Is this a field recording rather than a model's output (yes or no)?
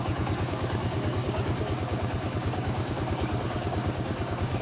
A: no